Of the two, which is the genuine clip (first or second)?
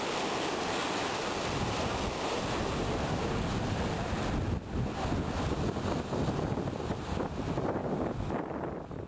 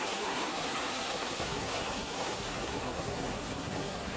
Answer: first